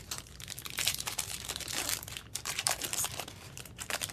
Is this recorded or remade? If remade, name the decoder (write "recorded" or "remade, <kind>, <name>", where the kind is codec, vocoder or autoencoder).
remade, vocoder, BigVGAN v2